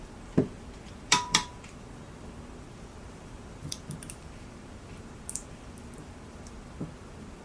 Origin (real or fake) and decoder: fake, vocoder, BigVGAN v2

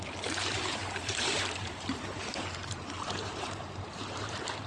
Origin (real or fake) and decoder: fake, vocoder, BigVGAN v2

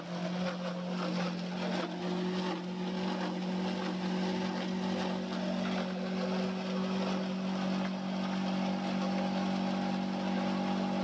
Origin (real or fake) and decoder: real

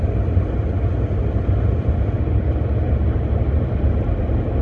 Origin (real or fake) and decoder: real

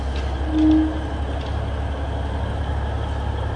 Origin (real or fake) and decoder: real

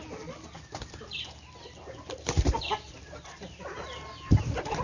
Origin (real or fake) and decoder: real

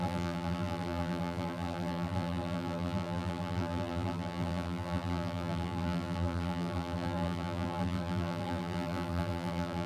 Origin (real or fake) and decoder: fake, vocoder, BigVGAN v2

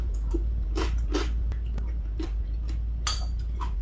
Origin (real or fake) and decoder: real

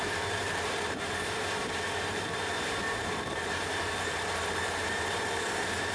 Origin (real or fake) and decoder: fake, vocoder, BigVGAN v2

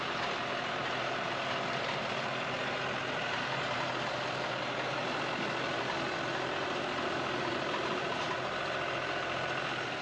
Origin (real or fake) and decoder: fake, vocoder, BigVGAN v2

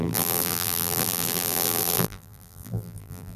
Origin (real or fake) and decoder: fake, vocoder, BigVGAN v2